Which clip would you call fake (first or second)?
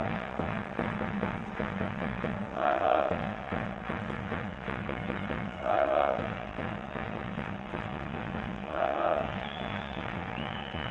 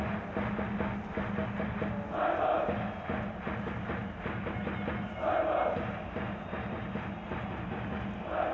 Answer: first